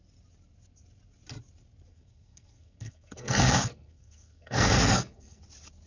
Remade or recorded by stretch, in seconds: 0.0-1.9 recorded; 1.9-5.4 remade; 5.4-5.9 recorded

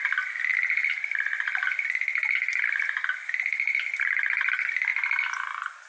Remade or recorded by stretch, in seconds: 0.0-5.9 recorded

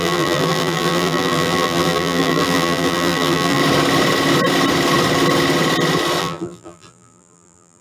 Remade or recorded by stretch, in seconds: 0.0-3.6 remade; 3.6-6.2 recorded; 6.2-7.8 remade